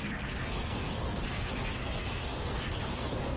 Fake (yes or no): yes